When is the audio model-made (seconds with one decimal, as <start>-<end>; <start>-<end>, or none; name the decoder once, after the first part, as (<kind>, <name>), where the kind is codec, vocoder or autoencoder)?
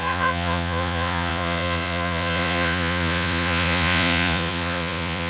0.0-5.3 (vocoder, Vocos)